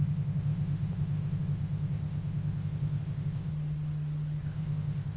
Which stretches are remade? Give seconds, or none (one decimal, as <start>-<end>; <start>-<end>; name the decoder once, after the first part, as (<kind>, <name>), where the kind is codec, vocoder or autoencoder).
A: 0.0-3.5 (codec, ZipCodec); 4.4-5.2